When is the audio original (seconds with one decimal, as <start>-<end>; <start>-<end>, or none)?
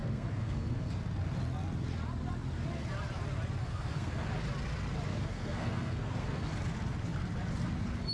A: 0.9-3.6; 4.3-5.1; 6.5-8.1